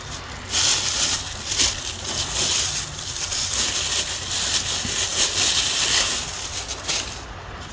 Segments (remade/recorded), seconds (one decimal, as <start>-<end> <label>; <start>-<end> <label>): 0.0-7.7 recorded